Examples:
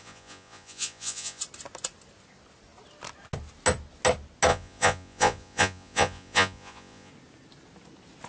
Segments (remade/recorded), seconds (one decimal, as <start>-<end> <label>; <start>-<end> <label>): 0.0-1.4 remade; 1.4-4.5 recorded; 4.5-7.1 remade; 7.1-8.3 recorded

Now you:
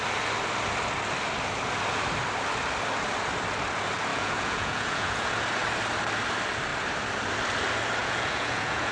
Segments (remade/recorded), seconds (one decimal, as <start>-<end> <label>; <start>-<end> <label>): 0.0-4.1 recorded; 4.1-5.4 remade; 5.4-8.0 recorded; 8.0-8.9 remade

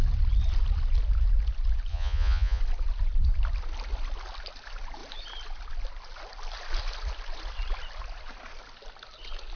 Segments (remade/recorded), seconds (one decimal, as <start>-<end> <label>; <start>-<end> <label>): 0.0-1.9 recorded; 1.9-2.6 remade; 2.6-9.6 recorded

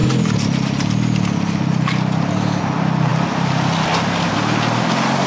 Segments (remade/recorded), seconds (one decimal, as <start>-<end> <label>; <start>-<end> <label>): 0.0-5.3 recorded

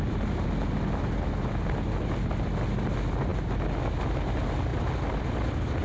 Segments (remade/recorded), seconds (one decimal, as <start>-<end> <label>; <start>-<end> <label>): 0.0-5.8 recorded